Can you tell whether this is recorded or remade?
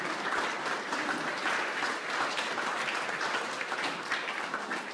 recorded